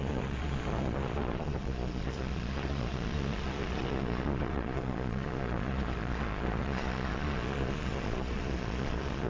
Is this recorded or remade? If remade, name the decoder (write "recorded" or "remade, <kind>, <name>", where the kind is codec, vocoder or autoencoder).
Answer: remade, vocoder, Vocos